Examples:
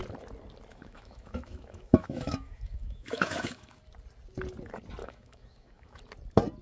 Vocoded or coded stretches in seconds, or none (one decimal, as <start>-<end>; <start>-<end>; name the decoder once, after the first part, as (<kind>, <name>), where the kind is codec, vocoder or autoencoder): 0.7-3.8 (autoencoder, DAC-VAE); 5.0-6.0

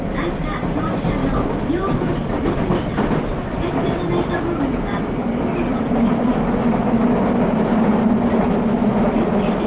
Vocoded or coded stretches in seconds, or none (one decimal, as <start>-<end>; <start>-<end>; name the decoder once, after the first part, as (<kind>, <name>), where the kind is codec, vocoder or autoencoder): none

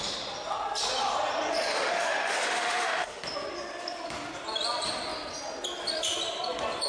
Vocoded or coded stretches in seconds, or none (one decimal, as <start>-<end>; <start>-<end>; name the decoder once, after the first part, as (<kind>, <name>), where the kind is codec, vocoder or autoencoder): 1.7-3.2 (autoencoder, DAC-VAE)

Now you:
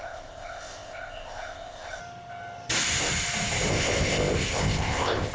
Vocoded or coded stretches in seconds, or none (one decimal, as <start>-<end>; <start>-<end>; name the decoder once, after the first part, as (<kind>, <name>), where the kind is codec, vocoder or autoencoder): 0.0-2.0 (codec, ZipCodec); 3.7-5.3